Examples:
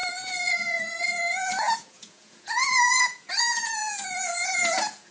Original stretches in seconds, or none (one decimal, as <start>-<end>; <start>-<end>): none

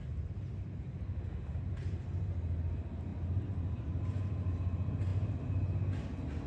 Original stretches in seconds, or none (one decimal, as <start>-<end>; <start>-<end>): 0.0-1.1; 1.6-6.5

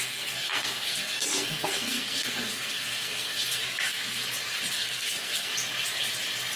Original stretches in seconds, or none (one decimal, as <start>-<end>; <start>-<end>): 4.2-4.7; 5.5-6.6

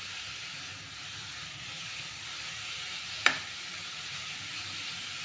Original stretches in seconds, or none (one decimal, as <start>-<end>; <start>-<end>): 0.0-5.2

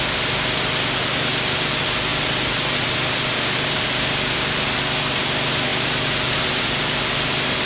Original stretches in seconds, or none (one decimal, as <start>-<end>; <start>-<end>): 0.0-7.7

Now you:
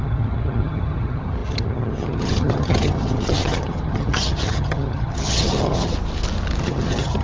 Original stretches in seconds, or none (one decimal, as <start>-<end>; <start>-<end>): 5.9-6.6

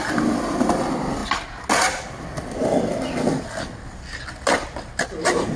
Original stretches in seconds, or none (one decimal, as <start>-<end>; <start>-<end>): 0.0-5.6